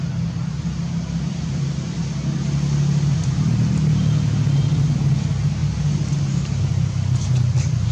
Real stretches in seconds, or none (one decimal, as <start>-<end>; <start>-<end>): 0.0-7.9